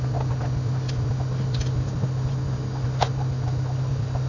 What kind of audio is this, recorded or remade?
recorded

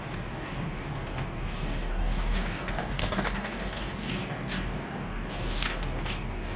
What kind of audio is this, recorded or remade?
remade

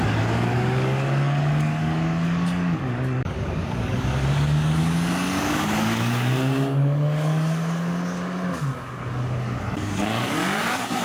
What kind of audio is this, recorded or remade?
remade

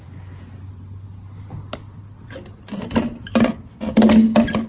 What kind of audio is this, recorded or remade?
recorded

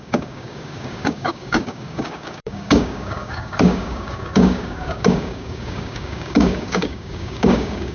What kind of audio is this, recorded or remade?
remade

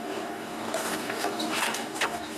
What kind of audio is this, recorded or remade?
remade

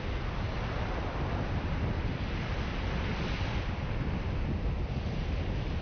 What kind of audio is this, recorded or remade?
recorded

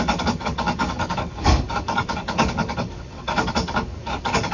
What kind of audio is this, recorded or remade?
remade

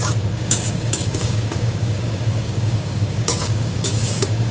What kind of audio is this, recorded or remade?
remade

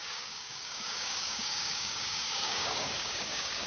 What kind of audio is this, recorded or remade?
remade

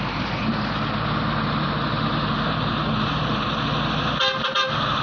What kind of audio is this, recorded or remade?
recorded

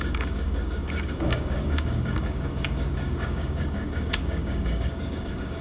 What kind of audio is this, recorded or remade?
remade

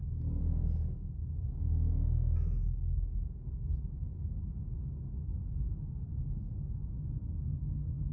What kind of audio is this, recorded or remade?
remade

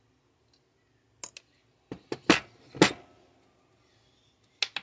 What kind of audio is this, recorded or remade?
recorded